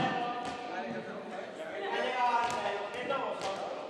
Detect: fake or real real